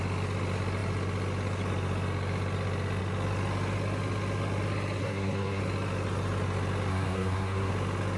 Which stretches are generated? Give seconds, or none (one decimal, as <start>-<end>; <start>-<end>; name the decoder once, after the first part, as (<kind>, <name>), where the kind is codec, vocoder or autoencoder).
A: 5.0-5.6 (codec, SNAC); 6.9-7.7